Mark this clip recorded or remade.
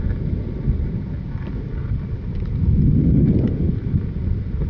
recorded